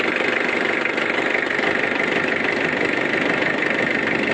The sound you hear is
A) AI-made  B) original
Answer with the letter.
A